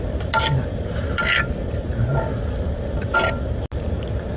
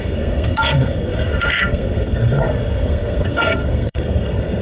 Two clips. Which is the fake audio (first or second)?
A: second